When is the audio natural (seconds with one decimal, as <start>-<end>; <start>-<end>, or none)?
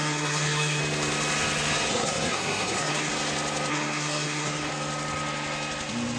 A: 0.8-1.9; 3.1-3.7; 4.7-6.2